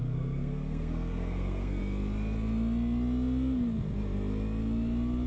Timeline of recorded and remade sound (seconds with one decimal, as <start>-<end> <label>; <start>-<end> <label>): 0.0-1.8 remade; 1.8-5.3 recorded